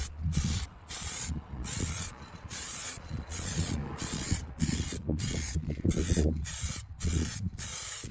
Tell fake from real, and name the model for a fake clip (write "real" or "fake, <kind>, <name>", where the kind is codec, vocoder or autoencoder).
fake, vocoder, Vocos